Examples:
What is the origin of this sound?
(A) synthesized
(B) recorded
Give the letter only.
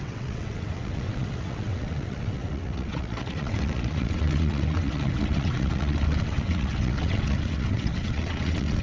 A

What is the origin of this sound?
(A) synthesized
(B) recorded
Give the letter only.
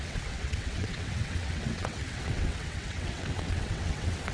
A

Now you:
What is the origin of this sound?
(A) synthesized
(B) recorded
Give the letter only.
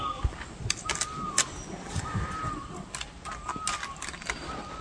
B